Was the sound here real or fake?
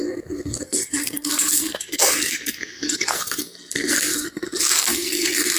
fake